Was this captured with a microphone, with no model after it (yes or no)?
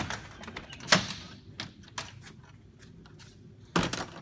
yes